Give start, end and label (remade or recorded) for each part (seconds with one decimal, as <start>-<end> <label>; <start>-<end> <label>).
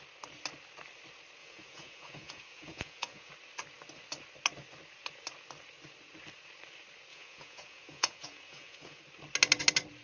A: 0.0-1.4 recorded; 1.4-3.3 remade; 3.3-7.1 recorded; 7.1-9.0 remade; 9.0-10.0 recorded